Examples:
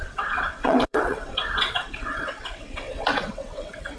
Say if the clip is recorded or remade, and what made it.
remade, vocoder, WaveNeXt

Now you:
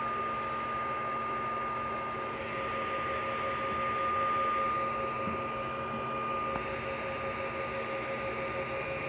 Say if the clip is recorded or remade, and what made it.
recorded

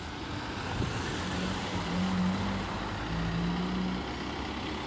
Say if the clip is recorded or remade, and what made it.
recorded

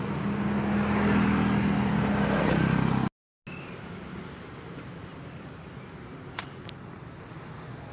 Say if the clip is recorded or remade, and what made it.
recorded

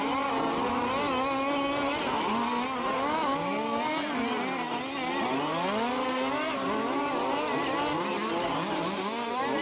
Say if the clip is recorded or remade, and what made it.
recorded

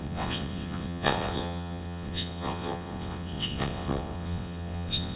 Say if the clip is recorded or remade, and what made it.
remade, vocoder, WaveNeXt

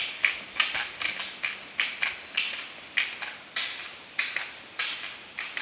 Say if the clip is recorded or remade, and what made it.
recorded